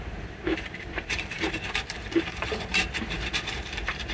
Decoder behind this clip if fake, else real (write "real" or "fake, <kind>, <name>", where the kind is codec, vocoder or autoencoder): fake, vocoder, BigVGAN v2